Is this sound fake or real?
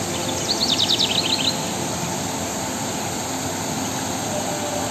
real